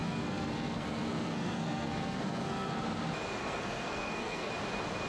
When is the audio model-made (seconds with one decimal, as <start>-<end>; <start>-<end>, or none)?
0.0-2.8; 3.4-4.5